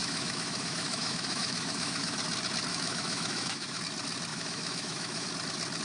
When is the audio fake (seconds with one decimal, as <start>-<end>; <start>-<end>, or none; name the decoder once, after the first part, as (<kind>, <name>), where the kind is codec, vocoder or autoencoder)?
0.0-2.2 (autoencoder, DAC-VAE); 2.7-3.8; 4.3-5.3